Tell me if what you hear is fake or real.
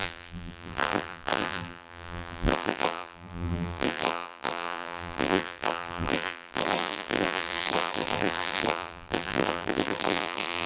fake